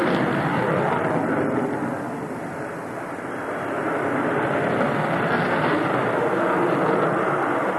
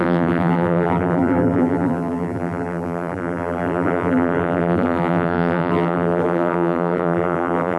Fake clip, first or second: second